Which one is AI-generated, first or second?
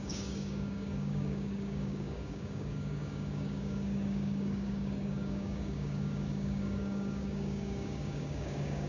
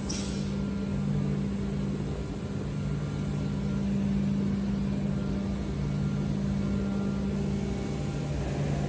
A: first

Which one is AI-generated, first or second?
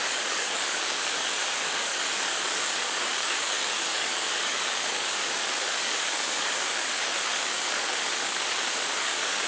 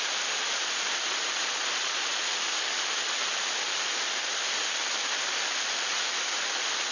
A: first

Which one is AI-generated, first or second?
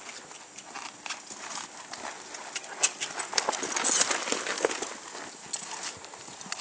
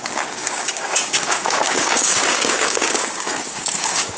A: second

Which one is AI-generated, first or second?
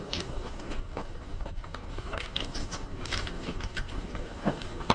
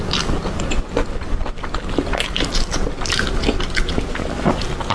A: first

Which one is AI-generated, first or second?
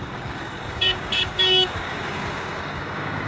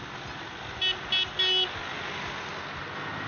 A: first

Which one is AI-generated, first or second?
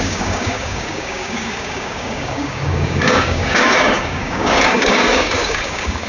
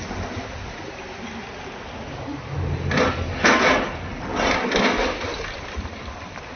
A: first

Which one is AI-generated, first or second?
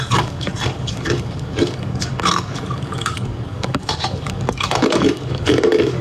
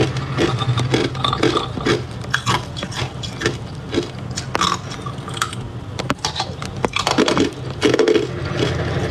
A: first